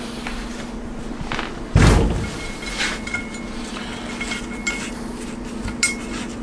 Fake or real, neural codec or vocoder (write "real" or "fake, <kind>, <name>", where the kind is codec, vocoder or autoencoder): real